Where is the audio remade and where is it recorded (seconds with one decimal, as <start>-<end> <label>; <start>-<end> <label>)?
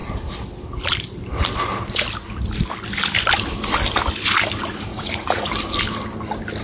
0.0-4.9 recorded; 4.9-5.5 remade; 5.5-6.6 recorded